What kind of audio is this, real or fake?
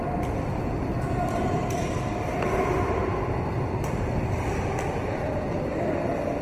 real